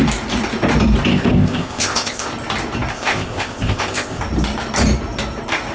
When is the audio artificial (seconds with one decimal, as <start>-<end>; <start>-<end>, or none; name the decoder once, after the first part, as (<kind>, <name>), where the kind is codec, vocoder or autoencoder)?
1.1-2.3 (codec, ZipCodec); 2.9-4.2